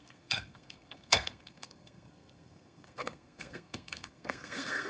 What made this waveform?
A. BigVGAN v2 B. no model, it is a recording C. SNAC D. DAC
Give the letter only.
C